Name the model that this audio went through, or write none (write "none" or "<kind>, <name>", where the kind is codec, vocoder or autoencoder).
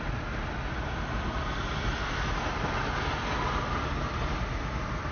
none